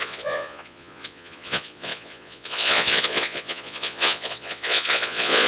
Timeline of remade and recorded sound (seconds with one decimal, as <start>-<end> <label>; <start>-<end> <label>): 0.0-5.5 remade